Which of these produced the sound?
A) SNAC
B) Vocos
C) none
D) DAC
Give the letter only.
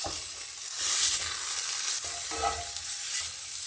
C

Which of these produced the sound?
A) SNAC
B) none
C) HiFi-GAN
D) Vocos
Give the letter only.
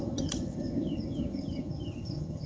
C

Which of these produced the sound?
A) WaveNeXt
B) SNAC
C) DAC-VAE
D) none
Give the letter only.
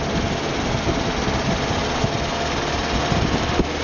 D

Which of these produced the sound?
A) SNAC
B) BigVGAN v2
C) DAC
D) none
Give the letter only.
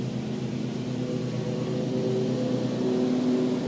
D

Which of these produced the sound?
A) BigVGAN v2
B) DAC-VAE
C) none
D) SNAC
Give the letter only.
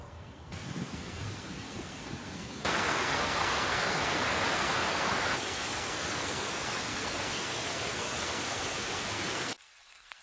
D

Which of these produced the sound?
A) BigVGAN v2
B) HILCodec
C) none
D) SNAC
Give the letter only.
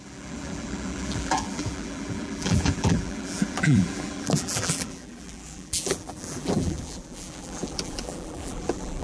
A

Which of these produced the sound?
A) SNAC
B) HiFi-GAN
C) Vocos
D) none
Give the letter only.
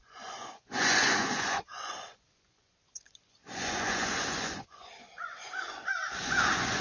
C